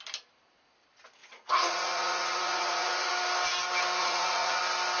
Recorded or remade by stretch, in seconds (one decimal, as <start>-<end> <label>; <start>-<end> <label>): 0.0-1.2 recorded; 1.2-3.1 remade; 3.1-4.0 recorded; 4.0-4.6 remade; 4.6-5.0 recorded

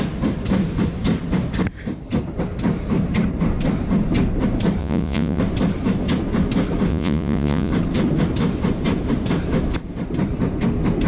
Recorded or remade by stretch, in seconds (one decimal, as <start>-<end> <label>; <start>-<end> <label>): 0.0-4.8 recorded; 4.8-5.4 remade; 5.4-6.9 recorded; 6.9-7.7 remade; 7.7-11.1 recorded

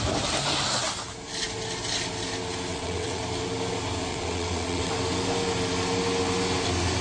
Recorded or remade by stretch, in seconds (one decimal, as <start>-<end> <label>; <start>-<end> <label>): 0.0-2.7 recorded; 2.7-3.2 remade; 3.2-4.1 recorded; 4.1-4.9 remade; 4.9-7.0 recorded

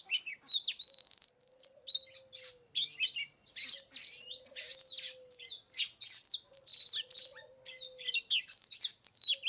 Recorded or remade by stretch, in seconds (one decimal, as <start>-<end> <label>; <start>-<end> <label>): 0.0-9.5 recorded

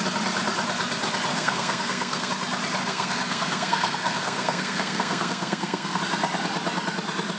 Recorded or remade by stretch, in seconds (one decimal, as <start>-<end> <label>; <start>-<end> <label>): 0.0-1.3 recorded; 1.3-2.3 remade; 2.3-2.8 recorded; 2.8-6.0 remade; 6.0-7.4 recorded